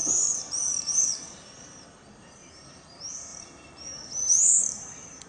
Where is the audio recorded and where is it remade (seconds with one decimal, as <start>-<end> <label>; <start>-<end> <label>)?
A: 0.0-5.3 remade